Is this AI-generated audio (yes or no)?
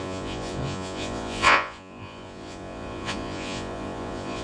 yes